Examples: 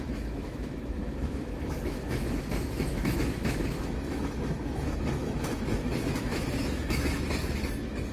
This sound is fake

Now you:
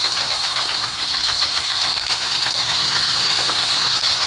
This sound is fake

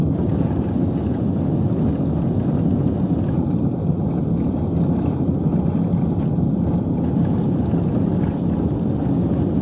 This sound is real